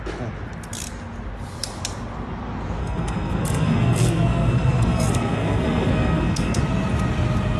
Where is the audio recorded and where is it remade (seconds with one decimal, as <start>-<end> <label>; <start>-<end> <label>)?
0.0-2.8 recorded; 2.8-6.6 remade; 6.6-7.6 recorded